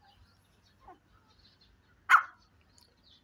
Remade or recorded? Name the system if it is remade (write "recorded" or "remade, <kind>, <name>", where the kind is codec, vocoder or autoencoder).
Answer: recorded